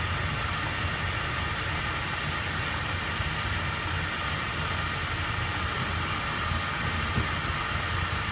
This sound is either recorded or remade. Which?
recorded